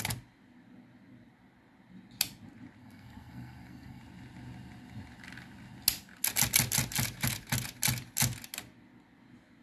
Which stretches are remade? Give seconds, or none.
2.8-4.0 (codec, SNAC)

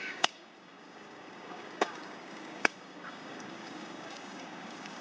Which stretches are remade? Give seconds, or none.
0.0-5.0 (codec, DAC)

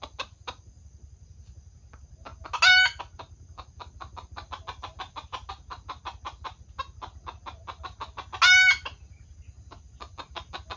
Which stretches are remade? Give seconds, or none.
none

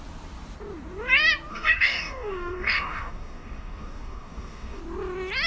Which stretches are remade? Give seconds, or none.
1.5-4.8 (codec, DAC)

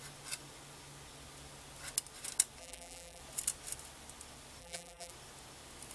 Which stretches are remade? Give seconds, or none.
2.6-3.2 (vocoder, BigVGAN v2); 4.6-5.1

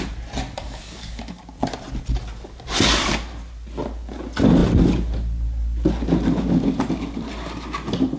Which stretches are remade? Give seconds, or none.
0.6-1.4 (codec, DAC)

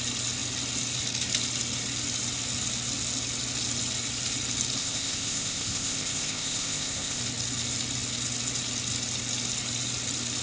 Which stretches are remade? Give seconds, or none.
4.8-7.2 (codec, ZipCodec)